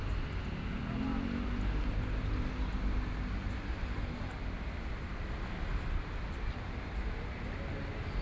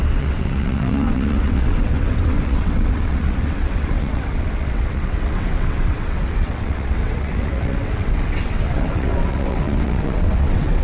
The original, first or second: first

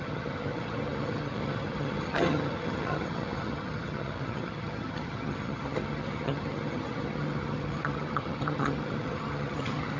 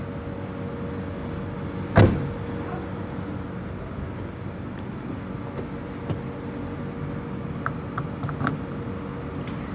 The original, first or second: second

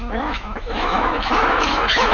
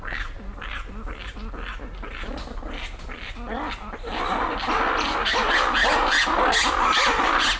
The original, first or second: second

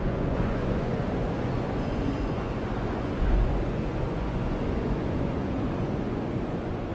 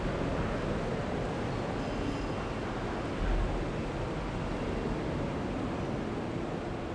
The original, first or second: second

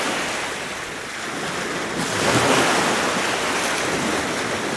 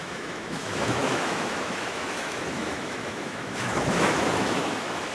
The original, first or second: first